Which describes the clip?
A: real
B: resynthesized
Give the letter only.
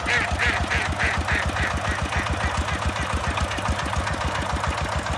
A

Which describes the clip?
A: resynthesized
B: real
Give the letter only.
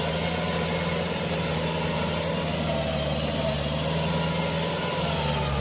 B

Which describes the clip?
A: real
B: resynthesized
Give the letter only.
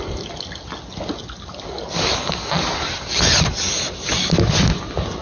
A